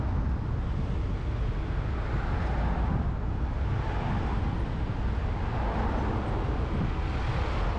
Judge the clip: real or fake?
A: real